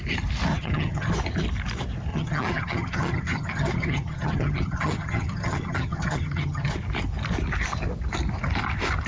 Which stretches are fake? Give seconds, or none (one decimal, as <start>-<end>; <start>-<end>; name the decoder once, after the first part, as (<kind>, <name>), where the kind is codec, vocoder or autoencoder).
0.5-1.1 (vocoder, HiFi-GAN); 2.1-6.7